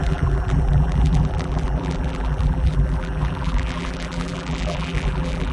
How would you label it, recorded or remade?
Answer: remade